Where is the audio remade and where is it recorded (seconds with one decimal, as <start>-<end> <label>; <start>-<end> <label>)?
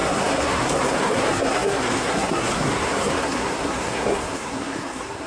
0.0-5.3 remade